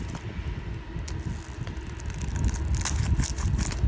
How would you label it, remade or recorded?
recorded